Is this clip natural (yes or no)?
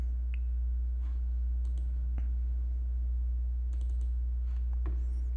yes